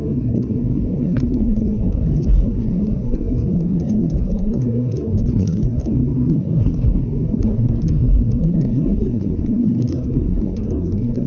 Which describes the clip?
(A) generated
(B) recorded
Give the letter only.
A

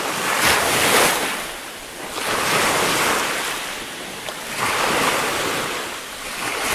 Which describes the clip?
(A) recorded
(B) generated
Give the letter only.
B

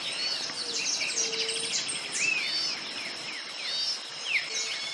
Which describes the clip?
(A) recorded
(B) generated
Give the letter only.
A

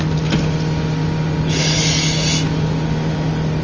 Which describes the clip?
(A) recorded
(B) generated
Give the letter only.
A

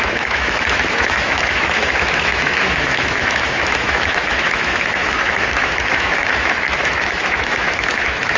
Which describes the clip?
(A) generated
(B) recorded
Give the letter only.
A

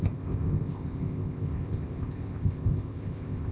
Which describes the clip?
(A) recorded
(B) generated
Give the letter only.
B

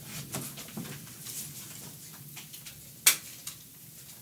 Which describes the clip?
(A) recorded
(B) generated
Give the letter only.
A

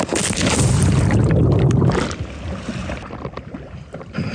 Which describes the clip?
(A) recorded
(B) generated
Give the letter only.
A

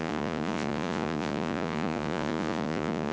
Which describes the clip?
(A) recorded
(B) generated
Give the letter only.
B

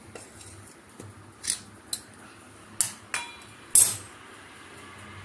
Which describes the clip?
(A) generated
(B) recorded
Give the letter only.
B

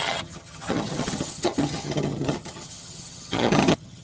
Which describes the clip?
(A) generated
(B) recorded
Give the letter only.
A